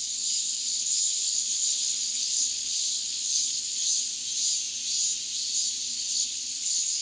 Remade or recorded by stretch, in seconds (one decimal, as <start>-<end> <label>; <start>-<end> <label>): 0.0-4.0 remade; 4.0-5.9 recorded; 5.9-7.0 remade